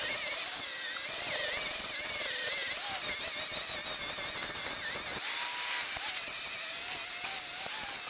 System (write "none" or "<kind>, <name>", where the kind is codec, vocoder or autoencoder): none